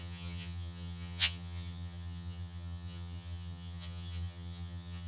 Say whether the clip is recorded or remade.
remade